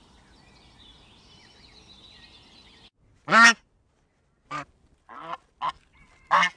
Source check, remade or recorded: recorded